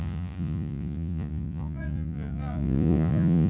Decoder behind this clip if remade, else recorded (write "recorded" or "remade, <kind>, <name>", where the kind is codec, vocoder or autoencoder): remade, vocoder, Vocos